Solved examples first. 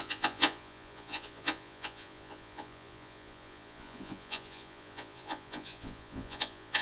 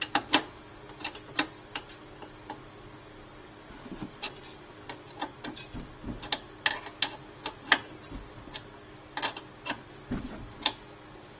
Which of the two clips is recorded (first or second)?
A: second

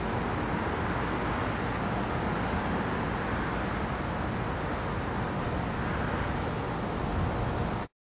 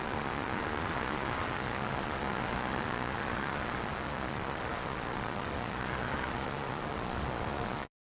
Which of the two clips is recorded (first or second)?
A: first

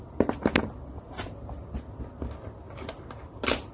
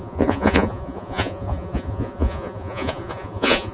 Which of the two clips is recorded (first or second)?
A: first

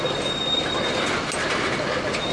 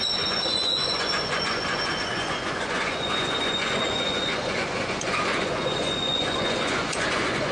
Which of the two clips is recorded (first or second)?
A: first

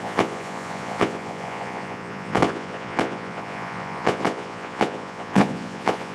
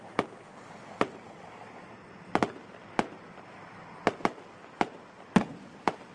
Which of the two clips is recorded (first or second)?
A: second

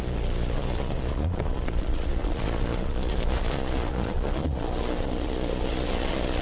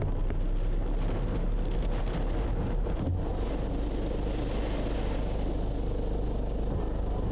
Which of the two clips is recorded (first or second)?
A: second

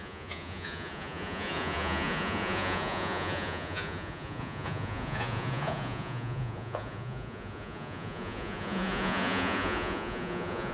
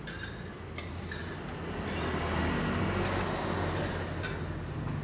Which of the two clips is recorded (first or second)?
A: second